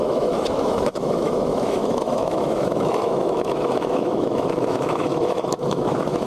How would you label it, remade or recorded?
remade